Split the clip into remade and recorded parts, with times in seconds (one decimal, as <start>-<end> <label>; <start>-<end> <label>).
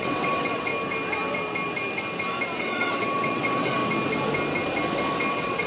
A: 0.0-0.7 remade; 0.7-2.6 recorded; 2.6-3.8 remade; 3.8-5.3 recorded; 5.3-5.7 remade